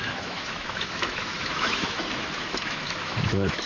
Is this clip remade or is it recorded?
remade